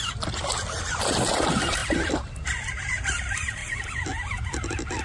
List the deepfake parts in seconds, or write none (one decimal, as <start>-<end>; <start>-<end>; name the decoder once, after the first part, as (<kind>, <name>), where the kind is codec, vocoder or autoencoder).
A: 0.0-3.6 (vocoder, BigVGAN v2); 4.6-5.0